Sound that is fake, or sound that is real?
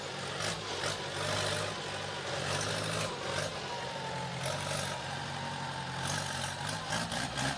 real